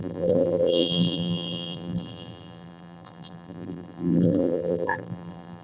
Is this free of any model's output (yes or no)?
no